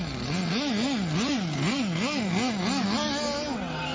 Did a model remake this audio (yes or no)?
no